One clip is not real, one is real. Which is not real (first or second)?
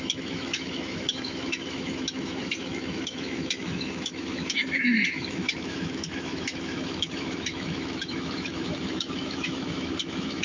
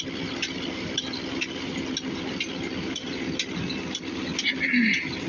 first